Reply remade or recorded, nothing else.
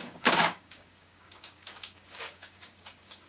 remade